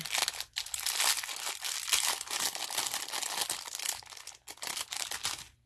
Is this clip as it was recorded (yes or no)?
yes